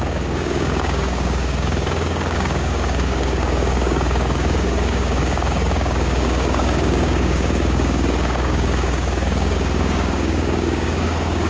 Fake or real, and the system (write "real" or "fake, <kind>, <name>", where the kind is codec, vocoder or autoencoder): fake, codec, DAC